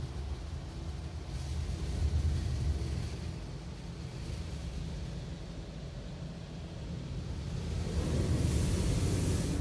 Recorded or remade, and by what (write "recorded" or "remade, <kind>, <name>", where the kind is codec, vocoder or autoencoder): recorded